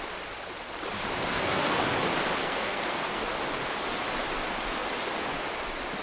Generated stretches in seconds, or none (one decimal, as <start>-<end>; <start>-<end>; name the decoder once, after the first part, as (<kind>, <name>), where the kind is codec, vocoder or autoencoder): 1.3-1.8 (codec, SNAC); 2.4-3.2